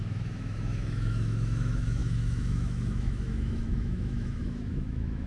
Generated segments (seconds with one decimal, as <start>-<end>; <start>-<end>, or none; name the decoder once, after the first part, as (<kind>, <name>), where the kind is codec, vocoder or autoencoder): 0.0-5.3 (autoencoder, DAC-VAE)